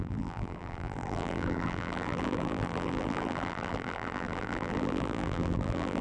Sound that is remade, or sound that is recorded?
remade